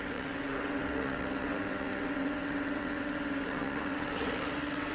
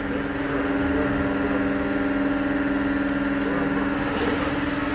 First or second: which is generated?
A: first